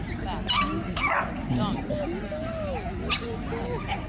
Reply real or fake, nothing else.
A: real